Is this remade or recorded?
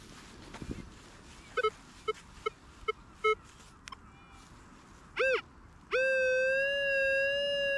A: recorded